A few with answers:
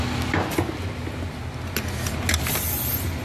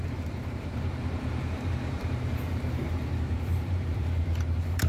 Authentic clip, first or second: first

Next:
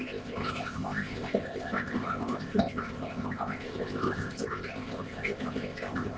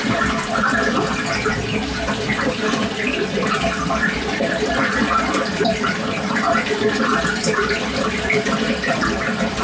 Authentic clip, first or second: second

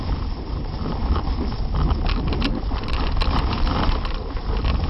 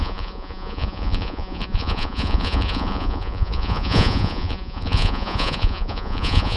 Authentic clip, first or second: first